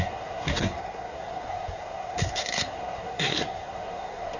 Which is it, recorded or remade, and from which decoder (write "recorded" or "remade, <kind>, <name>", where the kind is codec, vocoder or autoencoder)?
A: remade, codec, SNAC